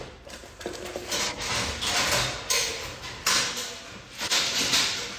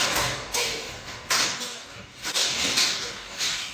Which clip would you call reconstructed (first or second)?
second